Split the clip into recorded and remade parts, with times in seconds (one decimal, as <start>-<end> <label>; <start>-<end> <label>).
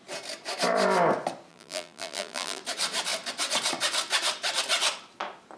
0.0-1.5 recorded; 1.5-2.6 remade; 2.6-5.6 recorded